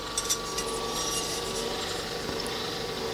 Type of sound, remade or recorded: recorded